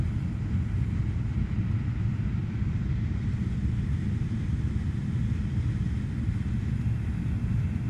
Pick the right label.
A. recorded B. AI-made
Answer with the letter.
A